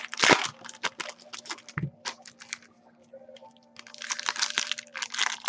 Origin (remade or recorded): recorded